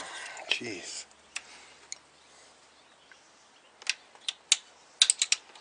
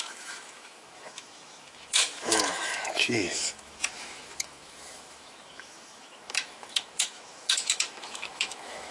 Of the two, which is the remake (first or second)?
second